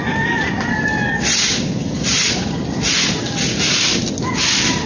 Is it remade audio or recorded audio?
recorded